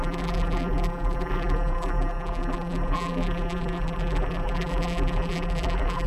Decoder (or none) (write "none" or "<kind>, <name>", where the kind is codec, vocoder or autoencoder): vocoder, BigVGAN v2